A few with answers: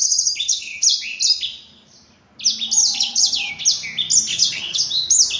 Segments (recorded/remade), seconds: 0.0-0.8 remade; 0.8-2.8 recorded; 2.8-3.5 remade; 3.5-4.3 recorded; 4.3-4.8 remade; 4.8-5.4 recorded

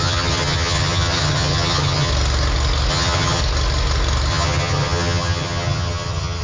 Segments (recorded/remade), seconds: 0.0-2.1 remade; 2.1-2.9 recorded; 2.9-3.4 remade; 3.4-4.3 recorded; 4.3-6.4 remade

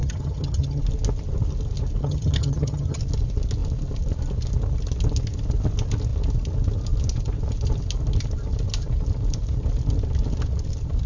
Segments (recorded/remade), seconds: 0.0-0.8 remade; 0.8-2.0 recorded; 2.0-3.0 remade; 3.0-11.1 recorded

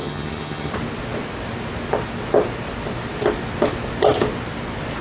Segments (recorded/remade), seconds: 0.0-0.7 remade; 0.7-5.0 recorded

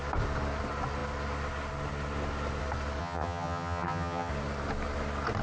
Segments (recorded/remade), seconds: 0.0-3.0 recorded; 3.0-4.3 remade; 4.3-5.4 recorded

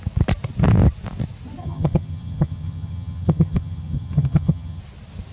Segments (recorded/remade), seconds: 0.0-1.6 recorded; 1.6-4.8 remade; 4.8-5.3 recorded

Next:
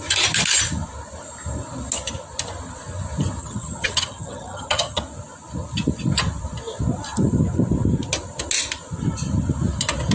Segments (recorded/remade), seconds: 0.0-3.4 recorded; 3.4-5.0 remade; 5.0-10.1 recorded

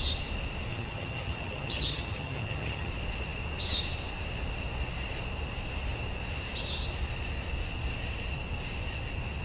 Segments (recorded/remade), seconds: 0.0-0.7 recorded; 0.7-2.9 remade; 2.9-9.4 recorded